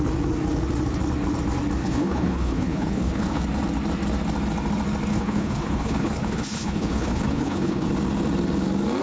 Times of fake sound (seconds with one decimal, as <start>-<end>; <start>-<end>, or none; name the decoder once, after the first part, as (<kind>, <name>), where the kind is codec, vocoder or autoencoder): 1.8-3.4 (codec, HILCodec); 5.1-7.9